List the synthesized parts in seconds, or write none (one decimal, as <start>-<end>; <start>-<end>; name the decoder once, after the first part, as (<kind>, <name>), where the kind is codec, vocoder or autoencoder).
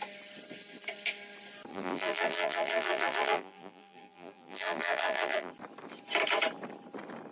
1.7-5.5 (vocoder, BigVGAN v2)